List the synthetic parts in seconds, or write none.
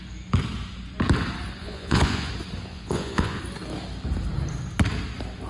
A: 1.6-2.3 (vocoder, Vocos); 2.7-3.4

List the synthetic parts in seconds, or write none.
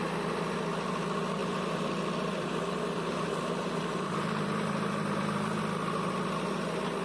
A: 1.4-5.6 (vocoder, BigVGAN v2)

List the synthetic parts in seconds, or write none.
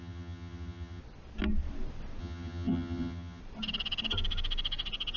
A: 0.0-1.0 (vocoder, HiFi-GAN); 2.2-3.4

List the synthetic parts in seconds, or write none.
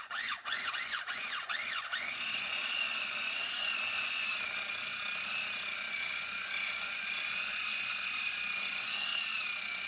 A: 0.0-4.3 (vocoder, Vocos); 5.9-9.1